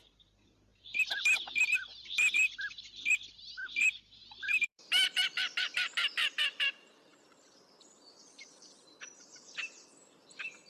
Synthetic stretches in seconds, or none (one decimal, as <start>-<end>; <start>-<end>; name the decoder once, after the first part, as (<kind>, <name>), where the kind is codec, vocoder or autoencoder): 0.0-10.7 (vocoder, BigVGAN v2)